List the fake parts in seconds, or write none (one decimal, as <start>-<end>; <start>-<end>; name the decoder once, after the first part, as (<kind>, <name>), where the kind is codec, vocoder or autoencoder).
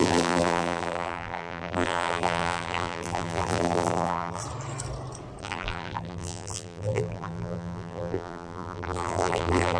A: 0.0-4.4 (vocoder, BigVGAN v2); 5.4-9.8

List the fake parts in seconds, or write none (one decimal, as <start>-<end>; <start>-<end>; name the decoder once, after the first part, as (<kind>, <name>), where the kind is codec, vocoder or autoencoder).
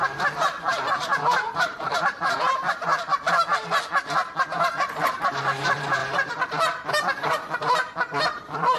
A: 0.0-2.9 (vocoder, BigVGAN v2); 5.1-8.8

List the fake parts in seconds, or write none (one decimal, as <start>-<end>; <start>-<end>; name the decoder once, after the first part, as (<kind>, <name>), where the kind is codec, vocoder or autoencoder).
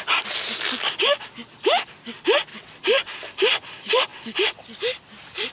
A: none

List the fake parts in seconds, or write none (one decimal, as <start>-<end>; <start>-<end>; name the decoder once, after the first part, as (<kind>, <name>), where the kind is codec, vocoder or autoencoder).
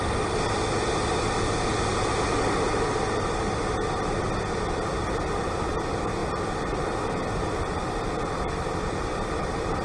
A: 6.2-6.8 (vocoder, BigVGAN v2)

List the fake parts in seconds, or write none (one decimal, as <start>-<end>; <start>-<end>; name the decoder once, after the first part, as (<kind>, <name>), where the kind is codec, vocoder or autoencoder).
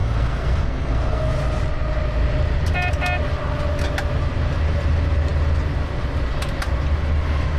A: 0.0-1.3 (codec, SNAC)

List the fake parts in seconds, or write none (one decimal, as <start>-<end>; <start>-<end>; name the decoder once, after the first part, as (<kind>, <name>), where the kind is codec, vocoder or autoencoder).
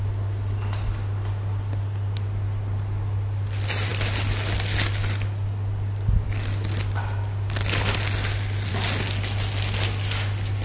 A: none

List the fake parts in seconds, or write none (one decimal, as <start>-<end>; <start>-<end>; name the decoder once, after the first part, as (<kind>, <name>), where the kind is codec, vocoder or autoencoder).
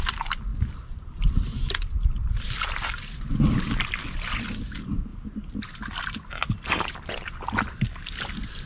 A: 0.5-3.7 (vocoder, BigVGAN v2)